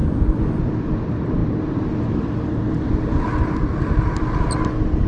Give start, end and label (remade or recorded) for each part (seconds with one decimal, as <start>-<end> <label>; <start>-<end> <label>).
0.0-0.6 remade; 0.6-5.1 recorded